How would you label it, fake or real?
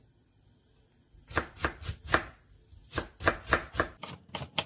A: real